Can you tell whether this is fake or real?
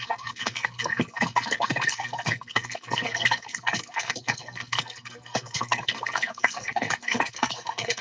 fake